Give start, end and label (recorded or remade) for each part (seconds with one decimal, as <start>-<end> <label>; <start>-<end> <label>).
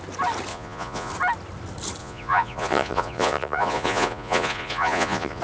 0.0-0.5 recorded; 0.5-1.1 remade; 1.1-2.0 recorded; 2.0-5.4 remade